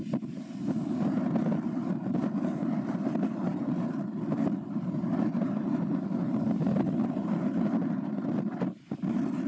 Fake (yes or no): no